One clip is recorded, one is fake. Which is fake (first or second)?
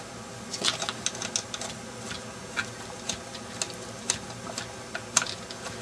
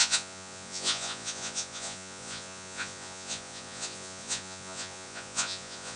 second